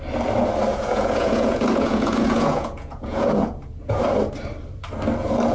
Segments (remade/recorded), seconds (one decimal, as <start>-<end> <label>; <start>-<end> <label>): 0.0-0.7 recorded; 0.7-4.0 remade; 4.0-5.5 recorded

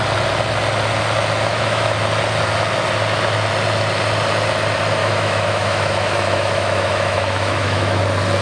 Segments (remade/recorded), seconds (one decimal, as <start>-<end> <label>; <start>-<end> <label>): 0.0-1.5 recorded; 1.5-2.0 remade; 2.0-5.0 recorded; 5.0-8.0 remade; 8.0-8.4 recorded

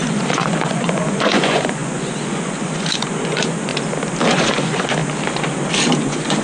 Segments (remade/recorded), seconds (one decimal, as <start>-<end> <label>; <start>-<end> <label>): 0.0-3.7 remade; 3.7-4.3 recorded; 4.3-5.0 remade; 5.0-6.0 recorded; 6.0-6.4 remade

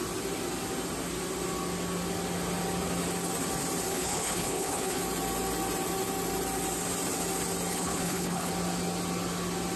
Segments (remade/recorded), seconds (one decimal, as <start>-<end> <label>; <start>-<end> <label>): 0.0-3.9 recorded; 3.9-5.0 remade; 5.0-7.7 recorded; 7.7-8.5 remade; 8.5-9.8 recorded

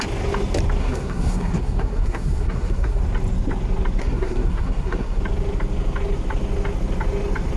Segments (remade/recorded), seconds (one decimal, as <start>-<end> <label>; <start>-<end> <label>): 0.0-0.8 recorded; 0.8-3.0 remade; 3.0-4.0 recorded; 4.0-5.2 remade; 5.2-7.6 recorded

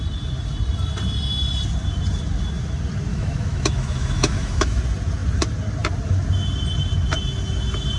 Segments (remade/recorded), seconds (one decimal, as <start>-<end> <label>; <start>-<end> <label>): 0.0-3.1 recorded; 3.1-4.8 remade; 4.8-8.0 recorded

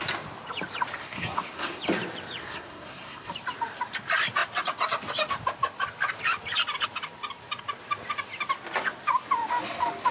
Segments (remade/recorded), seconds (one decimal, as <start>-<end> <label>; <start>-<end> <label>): 0.0-1.0 recorded; 1.0-1.8 remade; 1.8-2.4 recorded; 2.4-3.3 remade; 3.3-10.1 recorded